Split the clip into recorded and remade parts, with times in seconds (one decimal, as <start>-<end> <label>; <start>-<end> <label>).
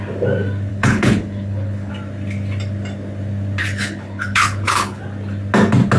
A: 0.0-0.7 recorded; 0.7-1.9 remade; 1.9-3.6 recorded; 3.6-5.0 remade; 5.0-6.0 recorded